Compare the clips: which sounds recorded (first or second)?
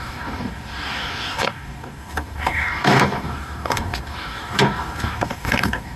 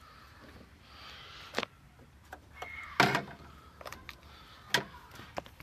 second